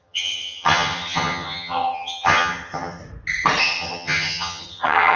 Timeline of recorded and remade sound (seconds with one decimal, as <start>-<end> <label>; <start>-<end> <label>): 0.0-3.0 remade; 3.0-3.6 recorded; 3.6-5.2 remade